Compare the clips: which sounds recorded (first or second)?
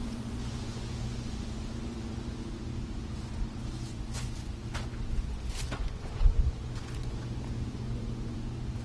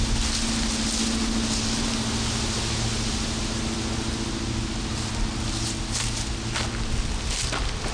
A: second